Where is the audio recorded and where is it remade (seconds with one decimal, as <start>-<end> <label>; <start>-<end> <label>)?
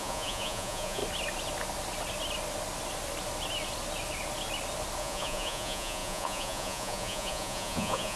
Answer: 0.0-1.0 remade; 1.0-5.0 recorded; 5.0-8.2 remade